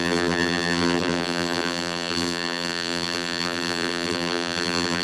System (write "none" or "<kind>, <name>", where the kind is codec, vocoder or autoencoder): vocoder, BigVGAN v2